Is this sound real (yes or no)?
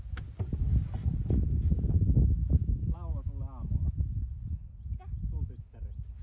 yes